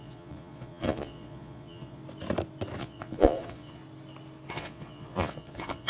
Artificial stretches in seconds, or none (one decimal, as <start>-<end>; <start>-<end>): 0.0-2.0; 2.8-3.8; 4.5-5.9